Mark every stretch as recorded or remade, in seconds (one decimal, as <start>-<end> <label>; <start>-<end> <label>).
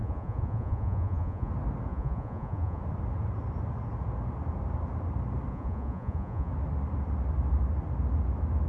0.0-1.5 remade; 1.5-1.9 recorded; 1.9-2.8 remade; 2.8-5.5 recorded; 5.5-6.5 remade; 6.5-8.7 recorded